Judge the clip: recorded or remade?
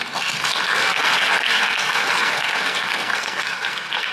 remade